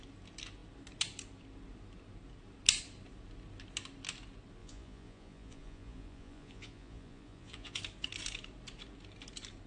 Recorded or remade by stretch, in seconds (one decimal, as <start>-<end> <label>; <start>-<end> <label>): 0.0-4.6 recorded; 4.6-7.8 remade; 7.8-9.7 recorded